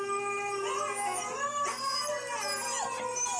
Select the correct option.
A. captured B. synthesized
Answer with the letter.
A